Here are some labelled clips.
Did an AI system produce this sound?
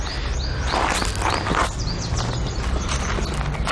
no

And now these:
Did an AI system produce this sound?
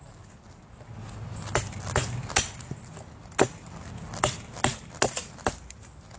no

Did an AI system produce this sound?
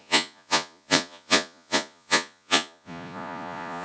yes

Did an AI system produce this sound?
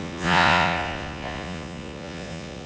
yes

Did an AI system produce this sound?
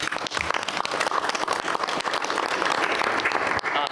no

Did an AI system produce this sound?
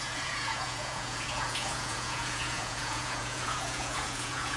yes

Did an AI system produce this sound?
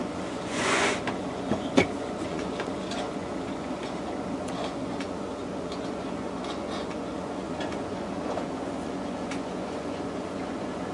yes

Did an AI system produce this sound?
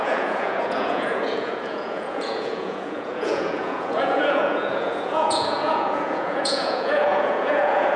yes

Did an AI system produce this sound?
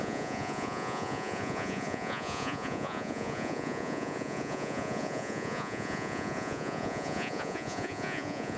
yes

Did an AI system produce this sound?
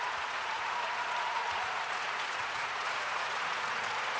yes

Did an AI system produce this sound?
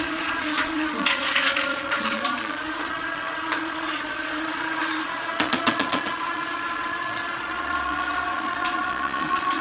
yes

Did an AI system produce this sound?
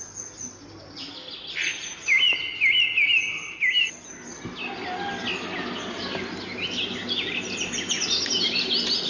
no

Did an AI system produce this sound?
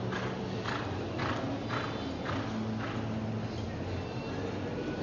no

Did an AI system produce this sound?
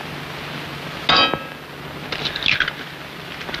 no